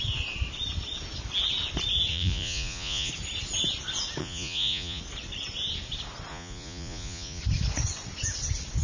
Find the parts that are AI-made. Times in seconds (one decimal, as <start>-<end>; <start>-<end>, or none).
2.1-3.1; 4.2-5.0; 6.3-7.4